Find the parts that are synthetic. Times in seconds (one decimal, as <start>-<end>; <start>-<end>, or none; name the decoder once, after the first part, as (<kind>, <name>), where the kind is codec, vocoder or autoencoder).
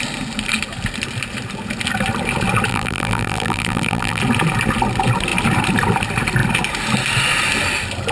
2.7-4.2 (vocoder, BigVGAN v2)